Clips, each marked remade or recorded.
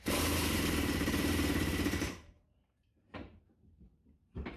remade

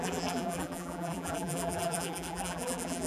remade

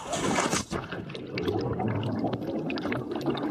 recorded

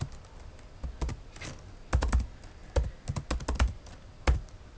recorded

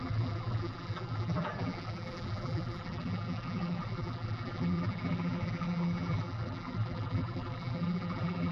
remade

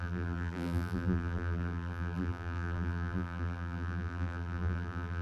remade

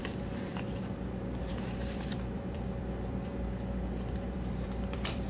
remade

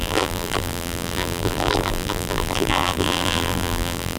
remade